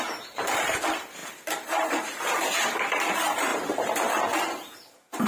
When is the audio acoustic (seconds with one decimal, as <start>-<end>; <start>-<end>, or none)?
none